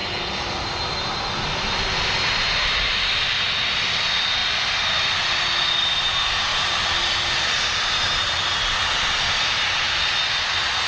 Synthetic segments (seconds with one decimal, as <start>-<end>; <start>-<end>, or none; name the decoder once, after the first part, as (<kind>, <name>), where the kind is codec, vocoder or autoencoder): 1.6-10.9 (vocoder, BigVGAN v2)